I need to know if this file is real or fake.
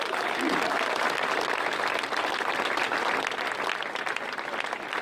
real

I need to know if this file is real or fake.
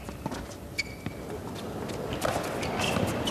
real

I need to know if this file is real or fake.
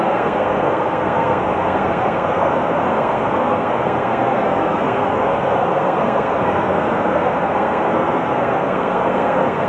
fake